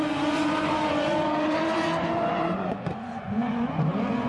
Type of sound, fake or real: fake